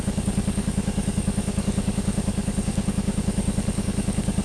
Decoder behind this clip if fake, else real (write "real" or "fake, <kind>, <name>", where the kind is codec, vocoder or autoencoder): fake, codec, DAC